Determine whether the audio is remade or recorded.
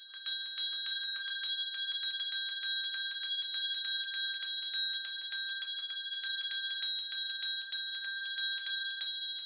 recorded